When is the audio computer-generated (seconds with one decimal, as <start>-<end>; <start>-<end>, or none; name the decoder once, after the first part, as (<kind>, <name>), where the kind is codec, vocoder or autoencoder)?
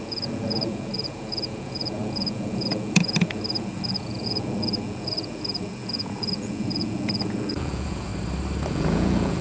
0.0-8.1 (vocoder, Vocos); 8.7-9.4